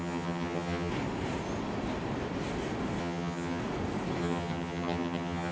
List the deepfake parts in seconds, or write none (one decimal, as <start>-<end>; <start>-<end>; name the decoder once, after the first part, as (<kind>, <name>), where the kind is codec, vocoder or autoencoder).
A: 0.0-0.9 (vocoder, HiFi-GAN); 3.0-3.6; 4.2-5.5